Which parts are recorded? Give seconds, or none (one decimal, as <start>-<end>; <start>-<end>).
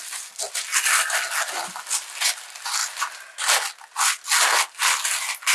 0.0-5.5